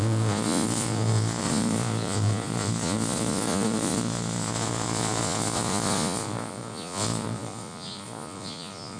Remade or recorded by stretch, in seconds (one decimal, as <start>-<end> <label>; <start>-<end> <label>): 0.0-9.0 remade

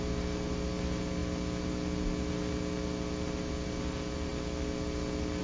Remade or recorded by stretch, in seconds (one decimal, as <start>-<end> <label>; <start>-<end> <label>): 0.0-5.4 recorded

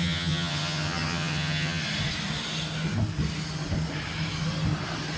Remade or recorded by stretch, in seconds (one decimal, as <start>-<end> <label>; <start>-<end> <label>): 0.0-1.8 remade; 1.8-5.2 recorded

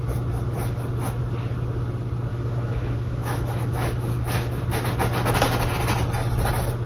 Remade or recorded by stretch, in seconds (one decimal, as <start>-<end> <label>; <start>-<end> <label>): 0.0-2.3 recorded; 2.3-4.6 remade; 4.6-6.9 recorded

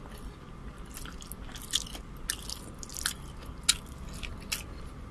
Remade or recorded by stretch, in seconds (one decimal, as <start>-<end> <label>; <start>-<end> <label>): 0.0-5.1 recorded